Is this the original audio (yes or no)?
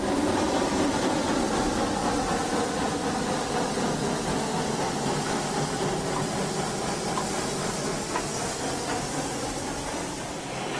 yes